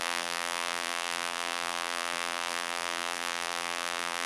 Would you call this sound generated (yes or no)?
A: yes